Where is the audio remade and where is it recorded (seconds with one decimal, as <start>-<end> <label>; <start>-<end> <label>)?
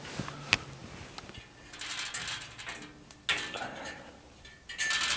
0.0-5.2 recorded